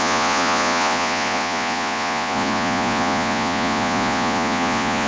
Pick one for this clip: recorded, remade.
remade